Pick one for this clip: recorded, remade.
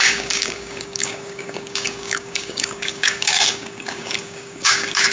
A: remade